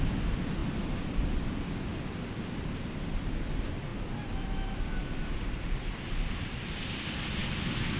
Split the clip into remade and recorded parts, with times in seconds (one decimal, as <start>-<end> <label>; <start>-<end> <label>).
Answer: 0.0-8.0 recorded